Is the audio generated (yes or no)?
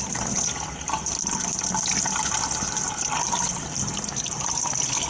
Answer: no